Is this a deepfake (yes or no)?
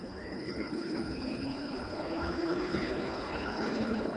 yes